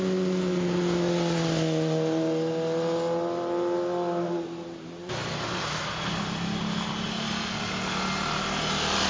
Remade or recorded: recorded